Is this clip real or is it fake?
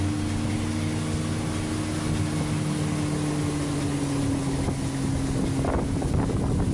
real